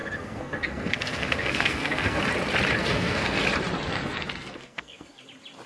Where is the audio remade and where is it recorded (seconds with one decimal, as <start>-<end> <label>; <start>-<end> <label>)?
0.0-2.2 remade; 2.2-2.8 recorded; 2.8-3.4 remade; 3.4-3.9 recorded; 3.9-5.2 remade; 5.2-5.7 recorded